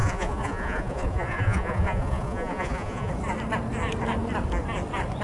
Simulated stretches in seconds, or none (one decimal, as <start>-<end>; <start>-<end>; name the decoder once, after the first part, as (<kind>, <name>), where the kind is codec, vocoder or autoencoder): 0.0-3.1 (vocoder, Vocos)